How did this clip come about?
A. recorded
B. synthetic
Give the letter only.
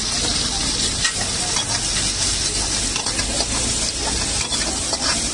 A